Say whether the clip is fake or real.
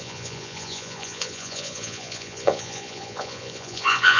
fake